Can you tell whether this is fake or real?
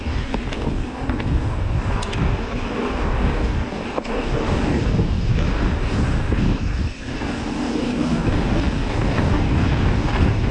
fake